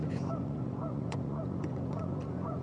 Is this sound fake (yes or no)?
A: yes